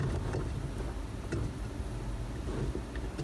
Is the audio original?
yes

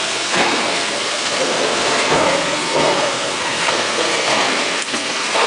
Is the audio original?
no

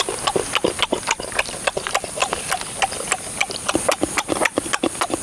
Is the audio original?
yes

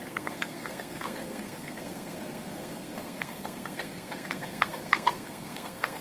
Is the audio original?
no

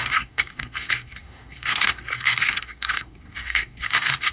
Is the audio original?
no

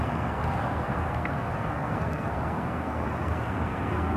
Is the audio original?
no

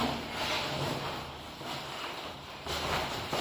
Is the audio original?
yes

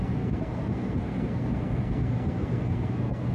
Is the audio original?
no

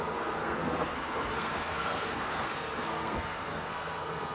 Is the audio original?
no